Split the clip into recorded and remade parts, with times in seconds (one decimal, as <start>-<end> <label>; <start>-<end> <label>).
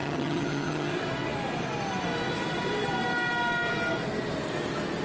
0.0-0.9 remade; 0.9-5.0 recorded